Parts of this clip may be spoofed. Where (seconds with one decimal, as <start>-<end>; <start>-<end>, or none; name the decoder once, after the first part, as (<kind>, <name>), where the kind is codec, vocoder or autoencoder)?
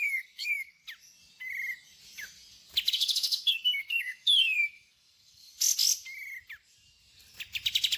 0.0-0.8 (codec, SNAC); 2.9-5.5